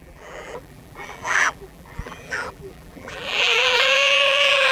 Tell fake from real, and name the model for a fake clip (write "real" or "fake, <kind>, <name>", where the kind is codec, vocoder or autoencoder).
fake, vocoder, BigVGAN v2